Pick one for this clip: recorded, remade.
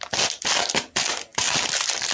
recorded